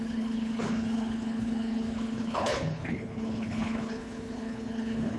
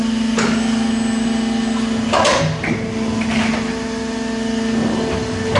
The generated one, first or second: first